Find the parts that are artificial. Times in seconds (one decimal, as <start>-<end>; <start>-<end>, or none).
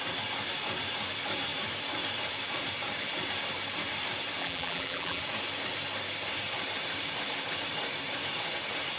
4.4-5.2